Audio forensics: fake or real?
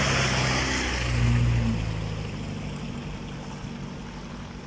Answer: real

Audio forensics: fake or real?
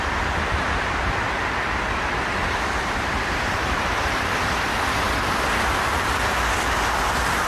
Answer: fake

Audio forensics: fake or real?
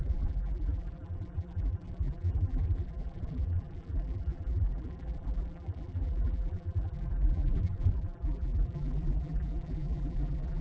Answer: fake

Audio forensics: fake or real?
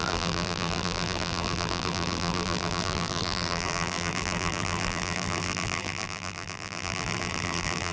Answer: fake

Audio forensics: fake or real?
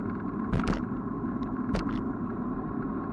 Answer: real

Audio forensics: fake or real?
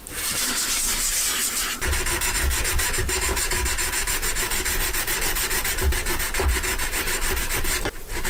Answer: fake